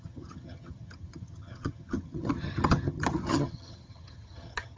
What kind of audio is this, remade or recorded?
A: remade